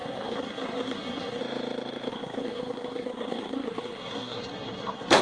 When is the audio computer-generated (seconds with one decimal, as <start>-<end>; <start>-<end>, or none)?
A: 0.0-1.4; 2.1-5.2